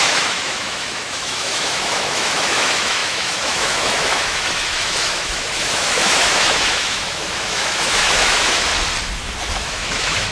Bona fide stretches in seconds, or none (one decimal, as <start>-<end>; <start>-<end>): 8.7-9.5